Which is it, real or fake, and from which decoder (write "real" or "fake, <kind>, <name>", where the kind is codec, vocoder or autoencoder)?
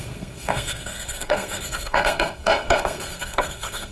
fake, codec, SNAC